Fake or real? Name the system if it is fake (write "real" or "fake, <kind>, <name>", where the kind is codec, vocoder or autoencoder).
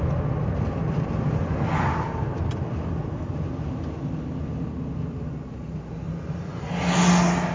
real